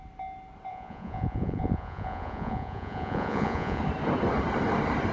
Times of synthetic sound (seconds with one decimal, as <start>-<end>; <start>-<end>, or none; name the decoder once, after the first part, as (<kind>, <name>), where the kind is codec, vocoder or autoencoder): 0.7-3.8 (vocoder, Vocos)